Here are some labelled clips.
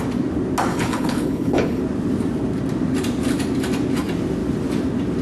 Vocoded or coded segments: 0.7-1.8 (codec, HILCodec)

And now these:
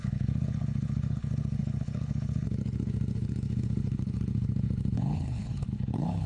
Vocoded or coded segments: 0.0-6.3 (codec, HILCodec)

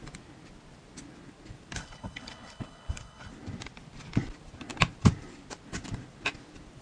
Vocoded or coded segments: 1.8-3.3 (codec, HILCodec)

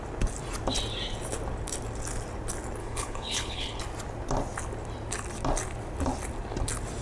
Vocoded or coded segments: 2.8-3.8 (codec, HILCodec)

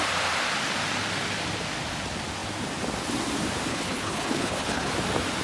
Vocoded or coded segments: 3.7-4.9 (codec, HILCodec)